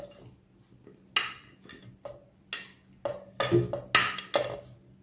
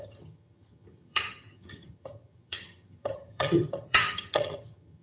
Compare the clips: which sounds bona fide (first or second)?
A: first